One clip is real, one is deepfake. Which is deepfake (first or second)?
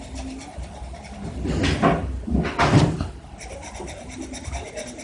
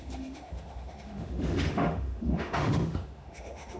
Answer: second